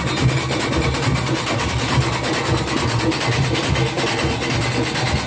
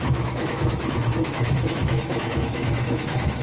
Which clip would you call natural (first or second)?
first